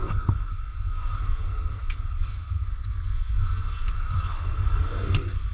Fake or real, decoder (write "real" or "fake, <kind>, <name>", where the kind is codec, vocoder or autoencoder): fake, codec, SNAC